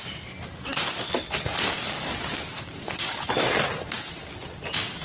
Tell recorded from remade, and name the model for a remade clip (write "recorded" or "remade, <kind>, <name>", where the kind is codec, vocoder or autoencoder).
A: recorded